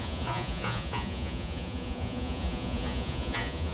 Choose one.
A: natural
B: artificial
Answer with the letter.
B